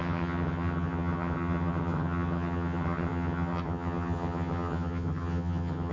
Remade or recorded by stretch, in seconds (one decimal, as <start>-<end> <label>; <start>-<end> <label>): 0.0-5.9 remade